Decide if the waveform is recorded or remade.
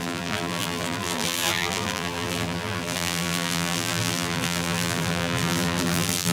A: remade